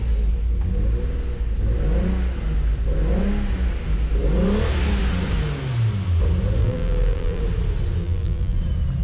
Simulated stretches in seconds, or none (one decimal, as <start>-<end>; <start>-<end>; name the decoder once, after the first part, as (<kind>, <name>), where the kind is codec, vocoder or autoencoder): 6.6-7.4 (vocoder, BigVGAN v2); 8.0-8.6